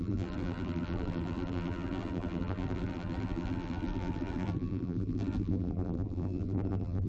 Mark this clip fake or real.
fake